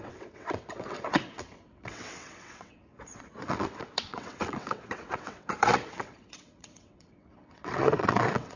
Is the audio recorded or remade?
remade